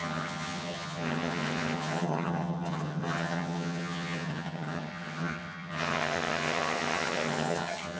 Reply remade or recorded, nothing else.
remade